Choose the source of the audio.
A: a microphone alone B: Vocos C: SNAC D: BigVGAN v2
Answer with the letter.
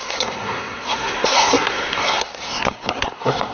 C